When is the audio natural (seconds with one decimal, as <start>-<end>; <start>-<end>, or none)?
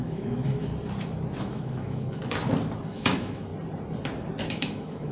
0.7-1.4; 2.2-2.9; 3.5-4.4